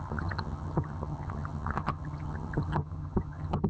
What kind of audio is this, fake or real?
fake